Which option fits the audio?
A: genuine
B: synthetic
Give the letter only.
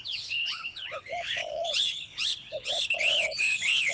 B